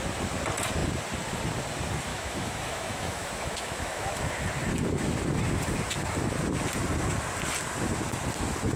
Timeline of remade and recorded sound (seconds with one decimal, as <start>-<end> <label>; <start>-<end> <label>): 0.0-2.1 recorded; 2.1-4.3 remade; 4.3-8.8 recorded